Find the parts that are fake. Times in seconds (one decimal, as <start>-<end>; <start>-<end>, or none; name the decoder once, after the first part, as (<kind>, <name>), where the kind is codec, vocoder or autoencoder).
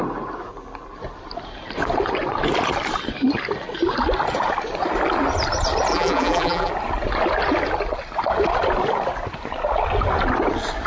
5.9-6.7 (vocoder, BigVGAN v2)